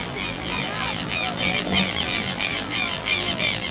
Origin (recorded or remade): remade